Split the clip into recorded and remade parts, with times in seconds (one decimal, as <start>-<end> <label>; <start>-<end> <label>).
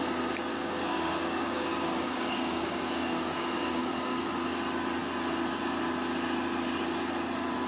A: 0.0-0.5 recorded; 0.5-4.3 remade; 4.3-7.7 recorded